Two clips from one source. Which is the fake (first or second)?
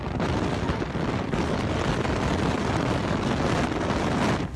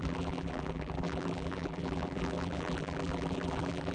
second